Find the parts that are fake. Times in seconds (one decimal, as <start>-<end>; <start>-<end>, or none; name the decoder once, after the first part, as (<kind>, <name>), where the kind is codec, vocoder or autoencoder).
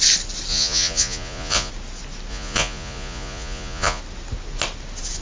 0.5-1.7 (vocoder, Vocos); 2.3-4.0